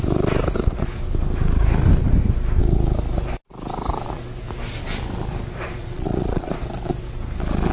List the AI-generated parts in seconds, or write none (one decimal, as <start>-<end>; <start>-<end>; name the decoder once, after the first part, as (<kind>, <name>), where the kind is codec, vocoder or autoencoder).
5.8-6.5 (vocoder, Vocos)